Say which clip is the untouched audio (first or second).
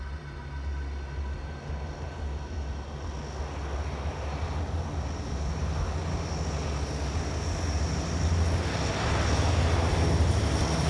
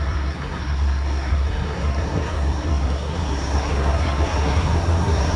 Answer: first